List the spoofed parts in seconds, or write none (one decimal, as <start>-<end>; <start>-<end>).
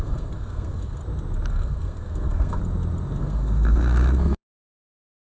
0.0-1.0; 1.5-2.6; 3.2-5.2